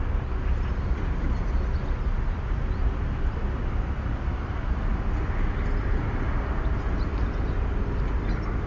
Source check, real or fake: real